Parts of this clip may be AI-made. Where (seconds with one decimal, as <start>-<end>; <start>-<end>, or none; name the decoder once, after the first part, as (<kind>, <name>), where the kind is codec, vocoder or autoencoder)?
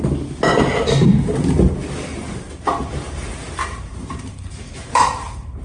2.1-5.6 (vocoder, BigVGAN v2)